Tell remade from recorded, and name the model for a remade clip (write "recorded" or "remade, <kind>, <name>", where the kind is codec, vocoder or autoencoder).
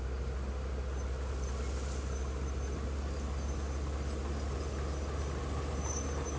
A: recorded